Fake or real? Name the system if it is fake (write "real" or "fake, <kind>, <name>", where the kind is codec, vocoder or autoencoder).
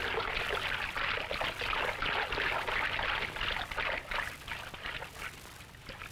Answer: real